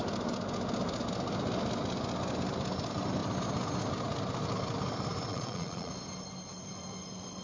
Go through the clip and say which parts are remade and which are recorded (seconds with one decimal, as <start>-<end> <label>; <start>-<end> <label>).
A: 0.0-5.3 recorded; 5.3-5.9 remade; 5.9-7.4 recorded